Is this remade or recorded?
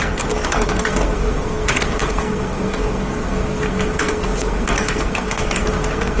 remade